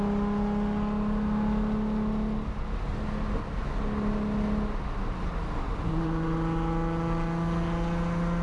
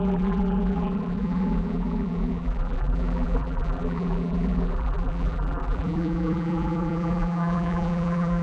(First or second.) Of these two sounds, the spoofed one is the second